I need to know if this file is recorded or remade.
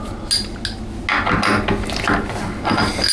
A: recorded